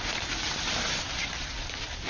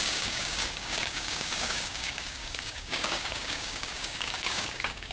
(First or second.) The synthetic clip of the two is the second